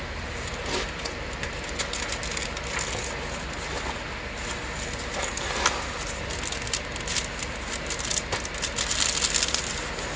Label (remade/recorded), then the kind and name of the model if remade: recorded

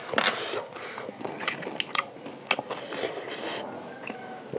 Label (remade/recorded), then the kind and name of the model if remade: recorded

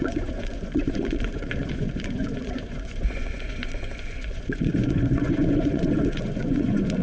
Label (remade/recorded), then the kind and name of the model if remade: remade, vocoder, Vocos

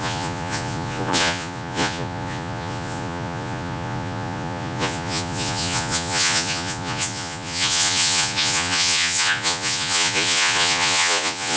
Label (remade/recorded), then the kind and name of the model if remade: remade, vocoder, Vocos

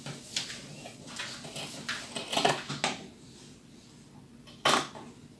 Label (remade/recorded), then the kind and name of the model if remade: recorded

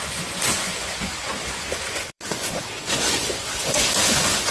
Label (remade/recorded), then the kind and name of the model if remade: remade, vocoder, Vocos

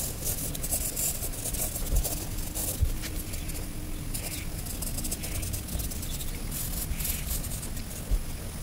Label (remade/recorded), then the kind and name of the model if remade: recorded